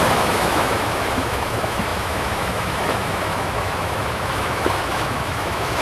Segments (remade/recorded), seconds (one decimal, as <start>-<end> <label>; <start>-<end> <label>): 0.0-5.8 remade